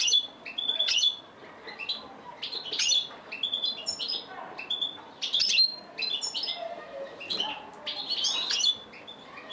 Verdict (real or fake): real